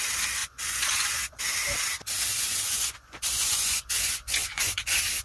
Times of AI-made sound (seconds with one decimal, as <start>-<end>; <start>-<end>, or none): 0.4-1.4; 2.3-4.8